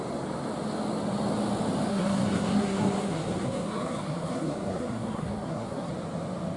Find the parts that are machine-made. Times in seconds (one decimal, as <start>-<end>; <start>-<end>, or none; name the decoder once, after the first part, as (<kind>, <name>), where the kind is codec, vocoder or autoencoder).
1.9-5.9 (codec, SNAC)

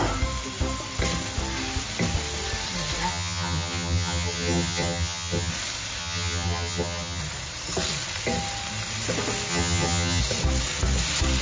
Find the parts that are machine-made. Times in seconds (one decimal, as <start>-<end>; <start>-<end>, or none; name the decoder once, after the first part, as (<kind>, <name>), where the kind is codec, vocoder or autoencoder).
3.1-5.5 (vocoder, HiFi-GAN); 6.0-7.2; 9.5-10.2

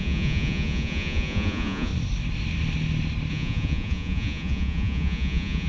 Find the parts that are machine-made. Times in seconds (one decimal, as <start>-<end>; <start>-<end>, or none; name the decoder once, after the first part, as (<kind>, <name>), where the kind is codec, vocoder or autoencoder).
0.0-1.9 (vocoder, Vocos); 3.3-5.7

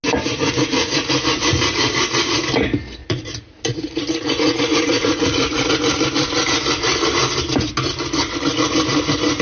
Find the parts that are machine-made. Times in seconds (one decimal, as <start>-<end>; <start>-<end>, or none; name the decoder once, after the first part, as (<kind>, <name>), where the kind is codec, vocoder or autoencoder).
0.4-1.1 (vocoder, Vocos); 3.0-5.7

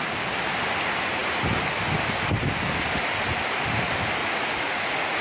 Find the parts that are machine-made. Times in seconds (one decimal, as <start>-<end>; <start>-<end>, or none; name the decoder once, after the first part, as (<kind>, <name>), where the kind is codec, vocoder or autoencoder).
4.2-5.2 (vocoder, Vocos)

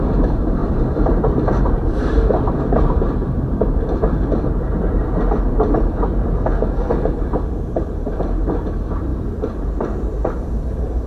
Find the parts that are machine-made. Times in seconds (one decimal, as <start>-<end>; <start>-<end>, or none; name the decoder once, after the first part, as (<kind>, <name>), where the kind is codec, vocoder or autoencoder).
0.0-6.5 (vocoder, BigVGAN v2); 7.5-11.1